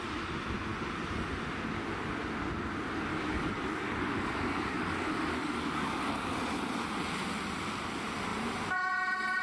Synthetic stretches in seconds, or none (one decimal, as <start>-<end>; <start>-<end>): 3.1-6.4